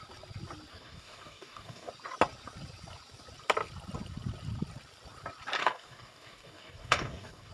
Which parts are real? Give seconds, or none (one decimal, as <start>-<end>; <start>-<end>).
0.0-0.7; 1.9-5.6